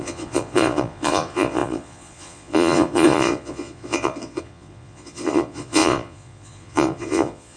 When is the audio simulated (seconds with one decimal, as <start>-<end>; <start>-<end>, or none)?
0.0-7.6

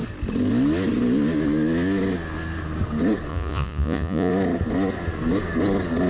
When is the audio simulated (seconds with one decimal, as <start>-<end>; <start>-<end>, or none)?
3.3-4.3